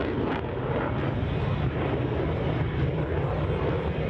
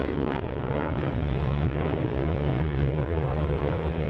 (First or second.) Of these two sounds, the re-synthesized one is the second